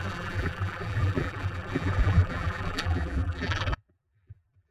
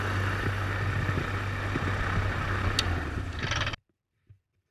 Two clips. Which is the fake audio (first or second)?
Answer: first